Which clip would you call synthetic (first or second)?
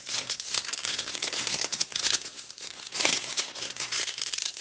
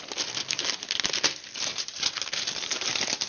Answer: first